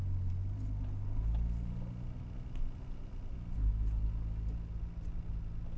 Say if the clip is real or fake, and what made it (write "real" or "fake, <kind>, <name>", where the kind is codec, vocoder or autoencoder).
real